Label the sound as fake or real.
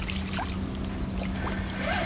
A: real